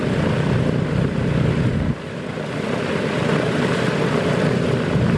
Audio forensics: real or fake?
real